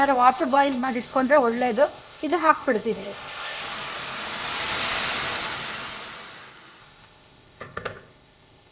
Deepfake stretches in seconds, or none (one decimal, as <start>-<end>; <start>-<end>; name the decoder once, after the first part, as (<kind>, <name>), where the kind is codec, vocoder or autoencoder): 0.0-3.6 (codec, ZipCodec); 6.8-8.7